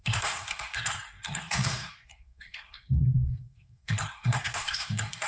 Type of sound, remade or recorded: remade